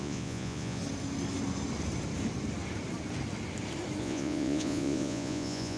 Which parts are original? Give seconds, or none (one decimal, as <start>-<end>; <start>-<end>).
0.8-4.0